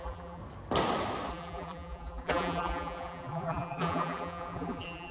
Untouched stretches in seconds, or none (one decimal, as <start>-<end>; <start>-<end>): 0.4-1.3